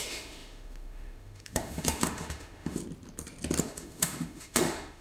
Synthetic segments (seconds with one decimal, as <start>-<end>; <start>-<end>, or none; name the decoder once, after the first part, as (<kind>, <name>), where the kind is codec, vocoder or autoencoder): 0.0-2.8 (autoencoder, DAC-VAE); 3.6-5.0